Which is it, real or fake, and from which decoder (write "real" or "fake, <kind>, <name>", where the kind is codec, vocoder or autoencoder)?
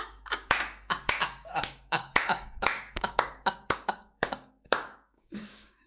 fake, codec, DAC